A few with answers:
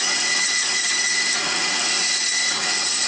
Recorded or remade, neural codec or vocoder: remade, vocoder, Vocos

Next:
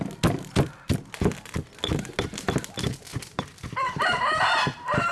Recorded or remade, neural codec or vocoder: recorded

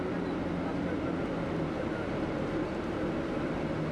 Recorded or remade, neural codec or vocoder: recorded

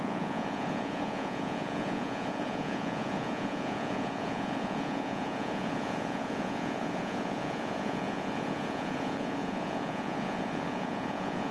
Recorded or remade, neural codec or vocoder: remade, vocoder, Vocos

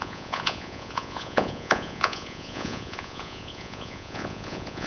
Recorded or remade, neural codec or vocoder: remade, vocoder, Vocos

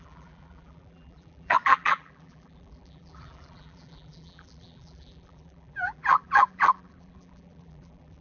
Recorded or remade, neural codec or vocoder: remade, vocoder, BigVGAN v2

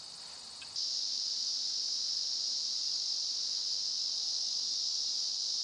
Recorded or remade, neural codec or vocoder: recorded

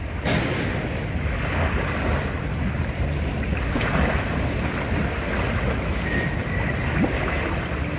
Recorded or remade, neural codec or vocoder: recorded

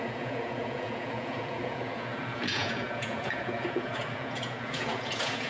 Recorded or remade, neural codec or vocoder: remade, vocoder, Vocos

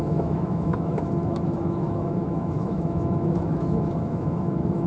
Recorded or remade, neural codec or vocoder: remade, autoencoder, DAC-VAE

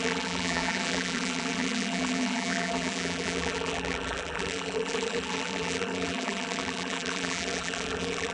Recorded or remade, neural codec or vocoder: remade, vocoder, BigVGAN v2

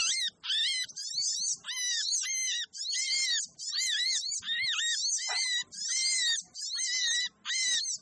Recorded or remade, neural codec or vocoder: recorded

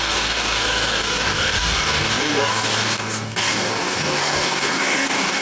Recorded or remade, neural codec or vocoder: remade, codec, DAC